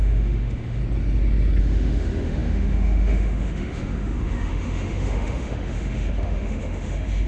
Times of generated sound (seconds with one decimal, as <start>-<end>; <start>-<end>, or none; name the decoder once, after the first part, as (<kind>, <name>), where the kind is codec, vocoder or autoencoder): 0.0-0.8 (autoencoder, DAC-VAE); 1.6-7.3